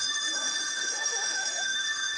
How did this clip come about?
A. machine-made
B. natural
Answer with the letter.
A